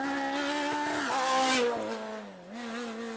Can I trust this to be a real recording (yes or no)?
yes